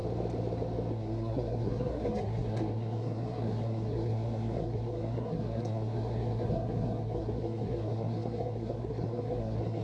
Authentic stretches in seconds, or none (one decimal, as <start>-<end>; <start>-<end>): 0.0-0.9